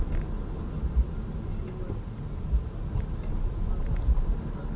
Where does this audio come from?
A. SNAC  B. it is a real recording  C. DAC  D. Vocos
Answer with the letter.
B